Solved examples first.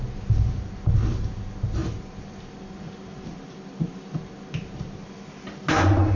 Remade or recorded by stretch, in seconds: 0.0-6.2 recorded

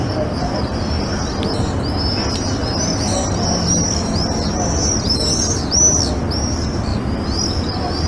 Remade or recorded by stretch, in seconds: 0.0-6.9 recorded; 6.9-8.1 remade

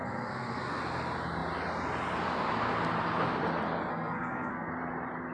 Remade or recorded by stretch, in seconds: 0.0-0.8 remade; 0.8-3.9 recorded; 3.9-4.7 remade; 4.7-5.3 recorded

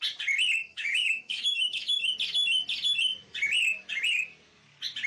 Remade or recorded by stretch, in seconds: 0.0-0.7 recorded; 0.7-2.1 remade; 2.1-5.1 recorded

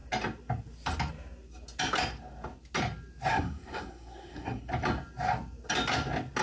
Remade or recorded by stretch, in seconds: 0.0-3.3 recorded; 3.3-4.7 remade; 4.7-6.4 recorded

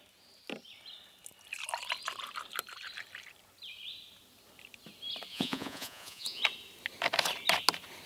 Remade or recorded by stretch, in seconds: 0.0-5.3 recorded; 5.3-6.4 remade; 6.4-8.1 recorded

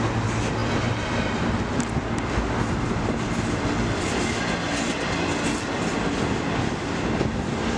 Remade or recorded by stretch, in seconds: 0.0-7.8 recorded